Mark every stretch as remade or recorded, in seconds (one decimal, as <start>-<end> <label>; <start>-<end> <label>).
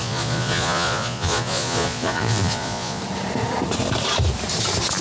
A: 0.0-3.0 remade; 3.0-5.0 recorded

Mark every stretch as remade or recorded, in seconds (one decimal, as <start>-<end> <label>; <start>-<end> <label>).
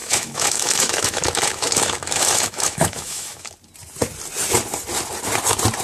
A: 0.0-3.5 remade; 3.5-5.8 recorded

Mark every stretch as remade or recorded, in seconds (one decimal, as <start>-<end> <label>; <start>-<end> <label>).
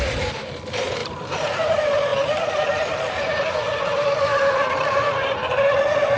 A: 0.0-2.1 remade; 2.1-3.4 recorded; 3.4-4.8 remade; 4.8-5.8 recorded; 5.8-6.2 remade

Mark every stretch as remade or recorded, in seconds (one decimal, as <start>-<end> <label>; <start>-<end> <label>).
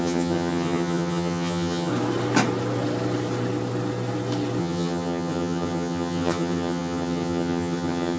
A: 0.0-1.9 remade; 1.9-4.6 recorded; 4.6-8.2 remade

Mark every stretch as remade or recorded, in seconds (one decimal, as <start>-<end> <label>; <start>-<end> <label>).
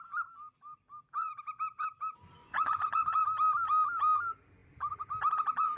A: 0.0-2.4 recorded; 2.4-3.2 remade; 3.2-5.8 recorded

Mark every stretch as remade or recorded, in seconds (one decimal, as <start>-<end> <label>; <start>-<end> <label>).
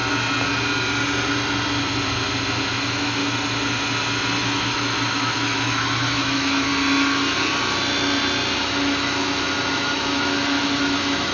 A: 0.0-2.8 recorded; 2.8-3.2 remade; 3.2-4.4 recorded; 4.4-6.7 remade; 6.7-8.7 recorded; 8.7-11.3 remade